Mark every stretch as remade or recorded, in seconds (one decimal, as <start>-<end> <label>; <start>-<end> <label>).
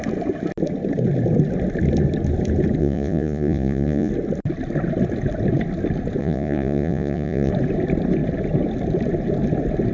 0.0-2.8 recorded; 2.8-4.1 remade; 4.1-6.2 recorded; 6.2-7.5 remade; 7.5-9.9 recorded